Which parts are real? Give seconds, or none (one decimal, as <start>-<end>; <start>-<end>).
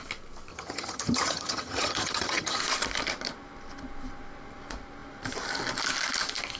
0.0-0.5; 2.6-6.6